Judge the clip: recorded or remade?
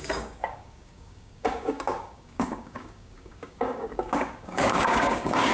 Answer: remade